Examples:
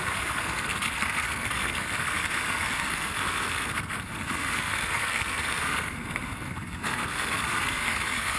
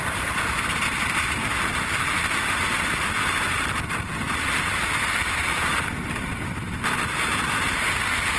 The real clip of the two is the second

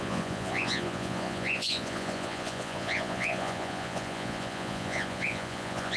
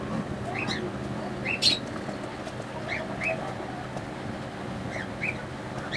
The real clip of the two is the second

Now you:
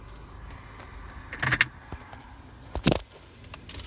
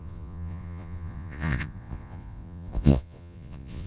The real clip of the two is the first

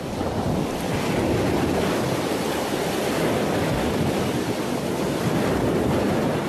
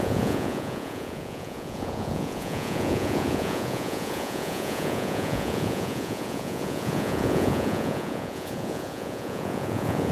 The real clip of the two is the first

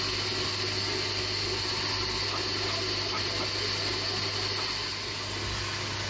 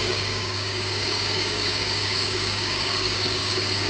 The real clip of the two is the first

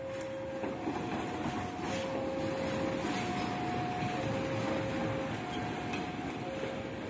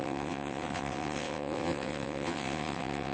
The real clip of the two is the first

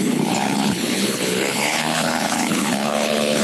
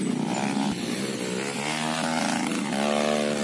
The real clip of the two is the second